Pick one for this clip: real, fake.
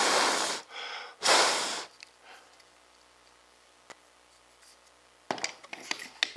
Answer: real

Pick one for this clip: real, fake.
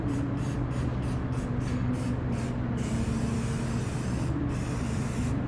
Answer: real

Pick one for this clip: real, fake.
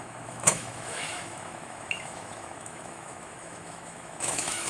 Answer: fake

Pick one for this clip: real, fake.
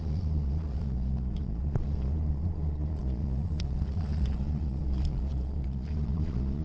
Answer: fake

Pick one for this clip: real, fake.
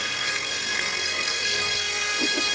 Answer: fake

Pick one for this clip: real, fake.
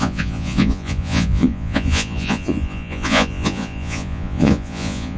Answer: fake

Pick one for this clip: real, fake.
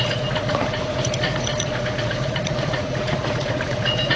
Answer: fake